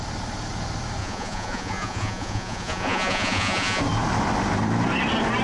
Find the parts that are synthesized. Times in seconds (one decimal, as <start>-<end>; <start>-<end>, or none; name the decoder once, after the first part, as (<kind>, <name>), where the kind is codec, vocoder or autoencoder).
1.0-3.8 (vocoder, Vocos)